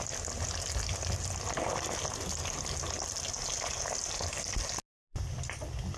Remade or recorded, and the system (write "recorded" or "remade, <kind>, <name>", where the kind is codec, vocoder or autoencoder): recorded